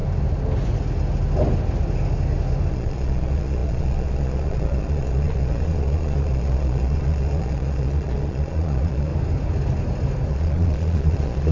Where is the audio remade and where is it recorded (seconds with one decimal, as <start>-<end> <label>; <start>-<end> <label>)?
0.0-2.7 recorded; 2.7-9.1 remade; 9.1-10.3 recorded; 10.3-11.5 remade